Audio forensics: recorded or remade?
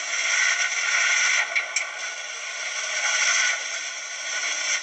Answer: recorded